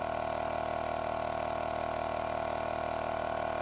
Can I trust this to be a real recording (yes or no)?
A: yes